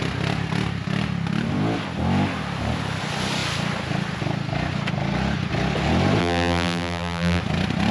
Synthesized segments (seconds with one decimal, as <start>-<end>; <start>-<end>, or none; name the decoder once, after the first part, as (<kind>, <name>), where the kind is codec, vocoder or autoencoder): 6.2-7.4 (vocoder, BigVGAN v2)